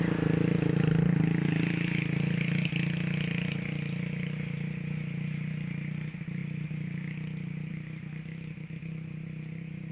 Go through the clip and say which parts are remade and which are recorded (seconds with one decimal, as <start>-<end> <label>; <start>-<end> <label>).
0.0-9.9 recorded